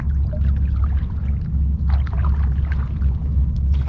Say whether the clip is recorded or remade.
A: recorded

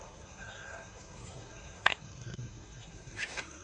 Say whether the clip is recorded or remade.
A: remade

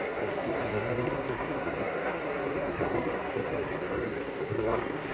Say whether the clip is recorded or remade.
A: remade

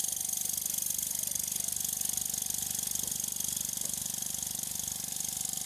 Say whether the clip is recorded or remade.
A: recorded